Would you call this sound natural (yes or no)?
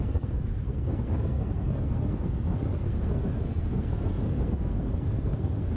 no